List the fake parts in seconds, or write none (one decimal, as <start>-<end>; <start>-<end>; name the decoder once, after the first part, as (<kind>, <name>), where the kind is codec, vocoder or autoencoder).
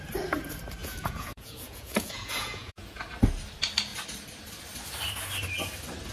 0.8-3.1 (vocoder, Vocos)